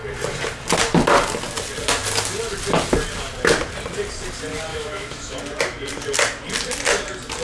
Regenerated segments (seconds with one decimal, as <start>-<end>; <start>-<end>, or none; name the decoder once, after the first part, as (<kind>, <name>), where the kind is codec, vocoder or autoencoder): 4.7-5.4 (autoencoder, DAC-VAE)